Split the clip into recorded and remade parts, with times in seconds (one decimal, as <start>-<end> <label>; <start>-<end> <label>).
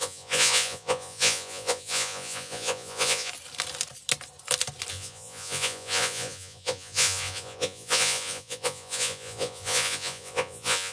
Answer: 0.0-3.3 remade; 3.3-4.9 recorded; 4.9-10.9 remade